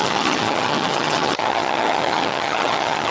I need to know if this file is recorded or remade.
remade